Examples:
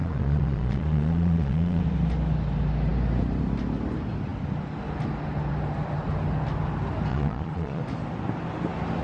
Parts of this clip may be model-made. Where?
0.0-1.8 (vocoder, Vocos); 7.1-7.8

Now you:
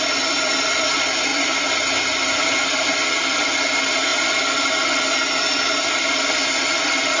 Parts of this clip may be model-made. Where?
none